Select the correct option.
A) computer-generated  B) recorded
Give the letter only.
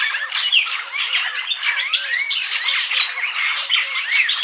B